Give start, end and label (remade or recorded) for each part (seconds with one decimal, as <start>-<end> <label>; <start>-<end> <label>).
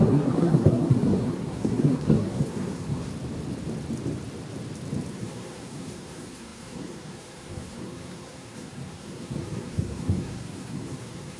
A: 0.0-3.1 remade; 3.1-5.1 recorded; 5.1-11.4 remade